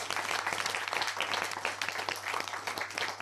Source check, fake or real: real